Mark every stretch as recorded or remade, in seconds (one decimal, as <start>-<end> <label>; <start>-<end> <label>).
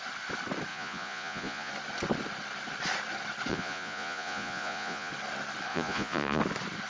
0.0-0.7 recorded; 0.7-1.7 remade; 1.7-3.5 recorded; 3.5-5.1 remade; 5.1-5.7 recorded; 5.7-6.4 remade; 6.4-6.9 recorded